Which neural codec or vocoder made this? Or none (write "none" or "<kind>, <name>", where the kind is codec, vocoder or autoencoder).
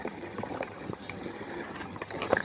vocoder, HiFi-GAN